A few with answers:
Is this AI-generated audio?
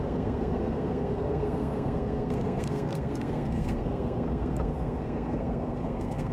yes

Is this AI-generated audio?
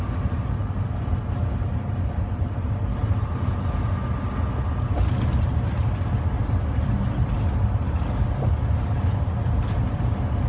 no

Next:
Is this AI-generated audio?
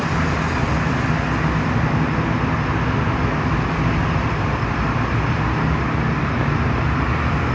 no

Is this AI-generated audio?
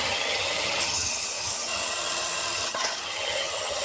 yes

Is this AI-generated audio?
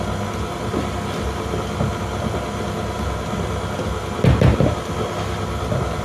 no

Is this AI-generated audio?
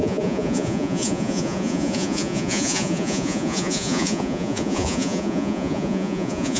yes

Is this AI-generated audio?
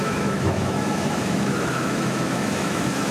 yes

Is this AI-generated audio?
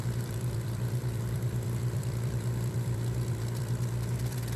yes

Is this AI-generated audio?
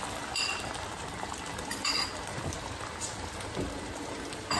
yes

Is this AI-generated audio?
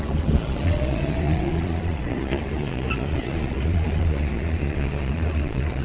yes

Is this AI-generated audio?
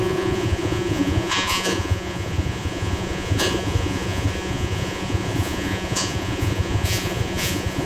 yes